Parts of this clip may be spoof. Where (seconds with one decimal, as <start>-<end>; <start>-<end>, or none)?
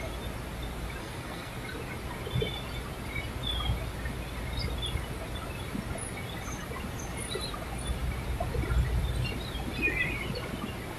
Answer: 1.0-1.5